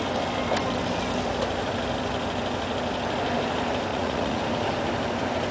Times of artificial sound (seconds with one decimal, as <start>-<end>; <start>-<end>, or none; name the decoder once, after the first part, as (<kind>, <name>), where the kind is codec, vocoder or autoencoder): 3.9-4.4 (vocoder, Vocos)